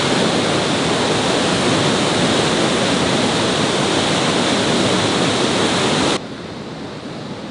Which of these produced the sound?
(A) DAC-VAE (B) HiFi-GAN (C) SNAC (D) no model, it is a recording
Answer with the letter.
D